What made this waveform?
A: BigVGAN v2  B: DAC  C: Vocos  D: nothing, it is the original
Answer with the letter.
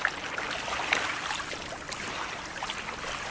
D